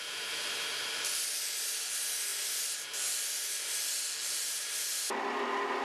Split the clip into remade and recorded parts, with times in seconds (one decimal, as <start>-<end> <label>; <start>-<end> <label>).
0.0-4.2 recorded; 4.2-4.9 remade; 4.9-5.8 recorded